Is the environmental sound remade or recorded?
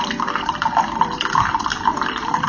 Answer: remade